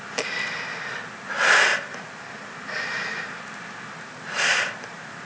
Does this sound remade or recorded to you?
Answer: recorded